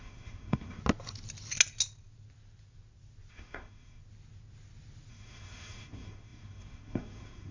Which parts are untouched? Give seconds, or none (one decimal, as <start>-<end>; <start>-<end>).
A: 0.8-3.3; 4.0-5.1